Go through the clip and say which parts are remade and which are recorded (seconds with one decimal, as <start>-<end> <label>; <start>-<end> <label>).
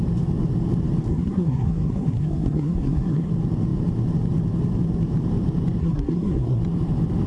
0.0-1.1 recorded; 1.1-3.3 remade; 3.3-5.8 recorded; 5.8-6.6 remade; 6.6-7.3 recorded